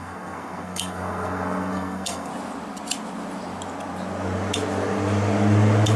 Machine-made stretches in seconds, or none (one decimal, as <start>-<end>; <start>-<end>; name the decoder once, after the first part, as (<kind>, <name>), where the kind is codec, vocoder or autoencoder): 0.0-2.3 (codec, SNAC)